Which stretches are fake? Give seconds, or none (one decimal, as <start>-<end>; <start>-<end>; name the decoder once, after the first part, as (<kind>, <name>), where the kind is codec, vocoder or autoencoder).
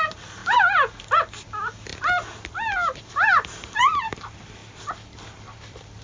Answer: none